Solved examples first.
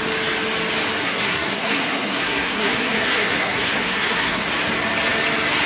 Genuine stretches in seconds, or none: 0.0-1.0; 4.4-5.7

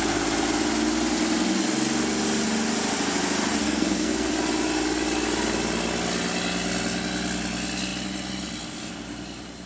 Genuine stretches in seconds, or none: 0.0-3.6; 4.3-9.7

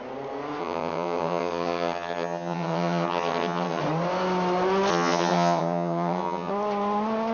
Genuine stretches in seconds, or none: 0.0-0.6; 3.8-4.9; 6.5-7.3

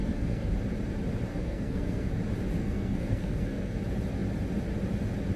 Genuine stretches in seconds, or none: 0.5-1.3; 2.2-2.6; 3.8-5.4

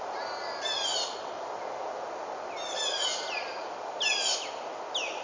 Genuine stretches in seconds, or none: 0.0-5.2

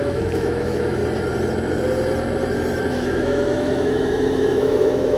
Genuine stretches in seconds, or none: 1.0-2.9